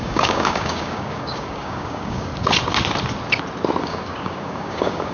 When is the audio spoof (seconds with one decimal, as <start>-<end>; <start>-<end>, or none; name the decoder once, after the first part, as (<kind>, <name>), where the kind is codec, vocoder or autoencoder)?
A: 0.0-2.3 (codec, DAC); 3.8-5.1